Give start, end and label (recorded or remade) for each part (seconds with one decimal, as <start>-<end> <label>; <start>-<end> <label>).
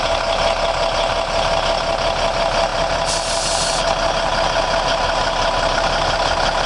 0.0-6.7 recorded